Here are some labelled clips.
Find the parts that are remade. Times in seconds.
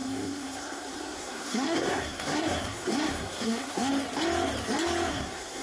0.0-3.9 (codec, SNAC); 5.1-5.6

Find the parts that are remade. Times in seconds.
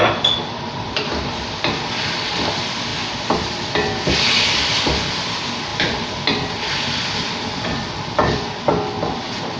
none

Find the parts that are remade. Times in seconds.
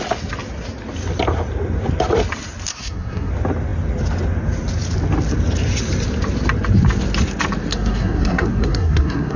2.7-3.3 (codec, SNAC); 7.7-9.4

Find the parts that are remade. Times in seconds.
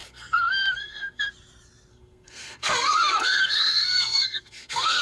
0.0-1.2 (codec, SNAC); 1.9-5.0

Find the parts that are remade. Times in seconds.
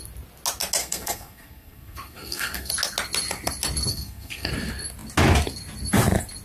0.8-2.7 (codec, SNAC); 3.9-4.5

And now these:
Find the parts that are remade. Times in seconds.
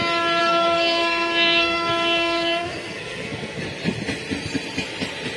0.4-3.6 (codec, SNAC)